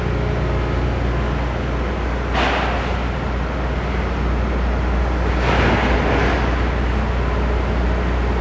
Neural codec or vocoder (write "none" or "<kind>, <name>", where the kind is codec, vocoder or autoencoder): none